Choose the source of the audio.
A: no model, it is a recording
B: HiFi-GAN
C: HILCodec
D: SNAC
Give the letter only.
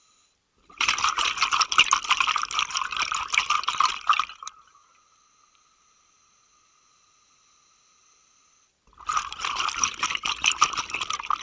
A